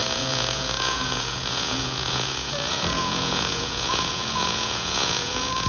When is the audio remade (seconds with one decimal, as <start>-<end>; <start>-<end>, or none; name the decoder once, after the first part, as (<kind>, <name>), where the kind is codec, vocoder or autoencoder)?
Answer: 0.0-5.7 (vocoder, Vocos)

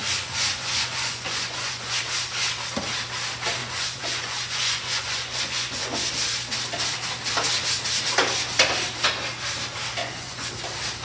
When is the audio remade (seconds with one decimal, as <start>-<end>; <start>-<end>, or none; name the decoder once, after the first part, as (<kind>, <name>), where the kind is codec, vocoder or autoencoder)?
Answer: 0.0-2.0 (vocoder, Vocos); 3.6-6.1; 10.0-10.5

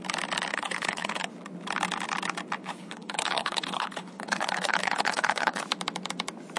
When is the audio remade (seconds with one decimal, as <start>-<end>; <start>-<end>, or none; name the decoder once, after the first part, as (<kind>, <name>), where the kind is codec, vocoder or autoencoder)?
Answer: 0.5-1.3 (codec, HILCodec); 2.6-5.6

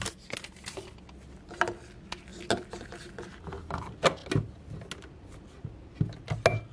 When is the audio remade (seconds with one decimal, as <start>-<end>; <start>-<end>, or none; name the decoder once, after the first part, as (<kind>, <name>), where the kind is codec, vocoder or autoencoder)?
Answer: none

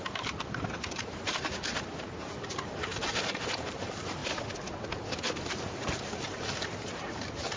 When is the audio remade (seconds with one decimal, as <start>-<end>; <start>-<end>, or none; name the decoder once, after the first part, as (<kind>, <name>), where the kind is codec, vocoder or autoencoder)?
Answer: 0.0-4.2 (vocoder, BigVGAN v2); 5.5-7.6